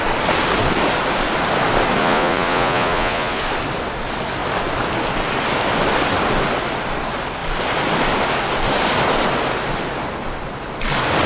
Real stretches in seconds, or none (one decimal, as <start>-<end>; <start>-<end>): 0.0-2.0; 3.4-11.3